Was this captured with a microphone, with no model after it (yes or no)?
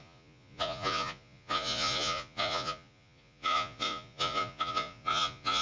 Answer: no